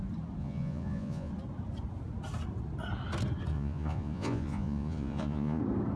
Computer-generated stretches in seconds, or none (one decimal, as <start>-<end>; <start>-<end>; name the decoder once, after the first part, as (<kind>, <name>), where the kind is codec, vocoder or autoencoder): 0.4-1.3 (vocoder, Vocos); 3.5-5.6